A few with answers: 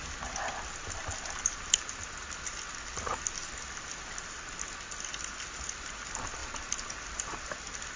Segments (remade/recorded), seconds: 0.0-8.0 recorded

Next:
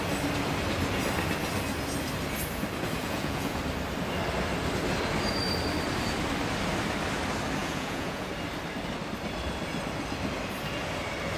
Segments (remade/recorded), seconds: 0.0-3.0 recorded; 3.0-3.6 remade; 3.6-7.6 recorded; 7.6-8.3 remade; 8.3-11.4 recorded

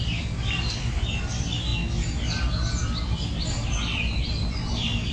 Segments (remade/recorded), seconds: 0.0-5.1 recorded

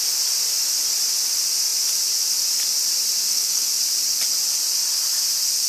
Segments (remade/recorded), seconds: 0.0-3.2 recorded; 3.2-3.7 remade; 3.7-5.7 recorded

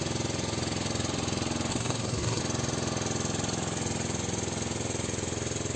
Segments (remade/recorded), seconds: 0.0-1.7 recorded; 1.7-2.4 remade; 2.4-5.8 recorded

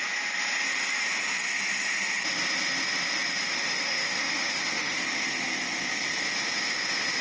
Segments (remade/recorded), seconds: 0.0-3.4 recorded; 3.4-5.0 remade; 5.0-7.2 recorded